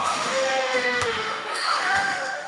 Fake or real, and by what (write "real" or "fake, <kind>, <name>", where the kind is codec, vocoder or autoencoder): fake, autoencoder, DAC-VAE